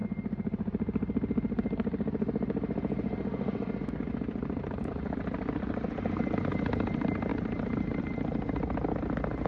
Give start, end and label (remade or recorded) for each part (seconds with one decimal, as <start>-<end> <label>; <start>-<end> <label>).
0.0-7.3 recorded; 7.3-8.0 remade; 8.0-9.5 recorded